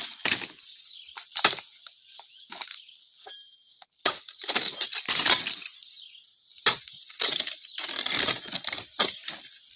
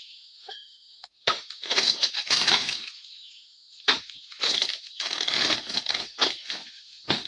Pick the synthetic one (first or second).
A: second